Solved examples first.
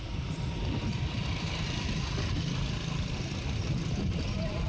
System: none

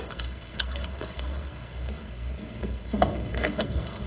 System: codec, SNAC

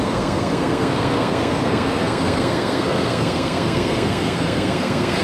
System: codec, SNAC